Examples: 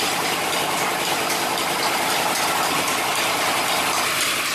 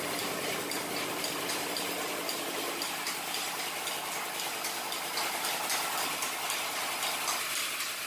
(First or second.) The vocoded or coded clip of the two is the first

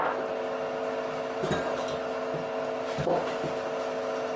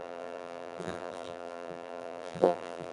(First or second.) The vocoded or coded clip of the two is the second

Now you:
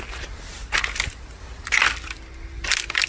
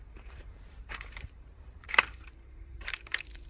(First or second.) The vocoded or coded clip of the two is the second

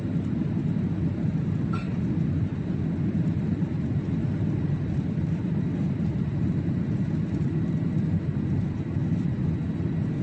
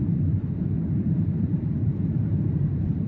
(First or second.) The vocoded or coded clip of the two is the second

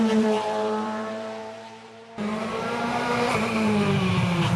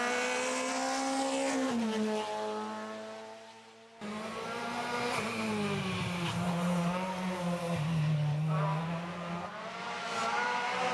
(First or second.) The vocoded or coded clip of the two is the first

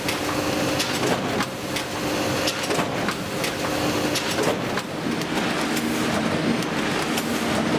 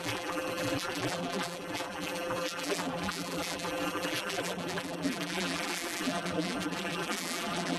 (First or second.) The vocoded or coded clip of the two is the second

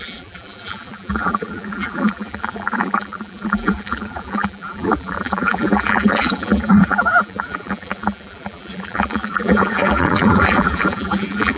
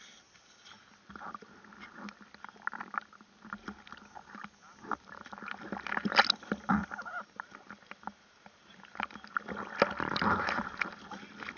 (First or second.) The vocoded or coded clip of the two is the first